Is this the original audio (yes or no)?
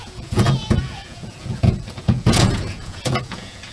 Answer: no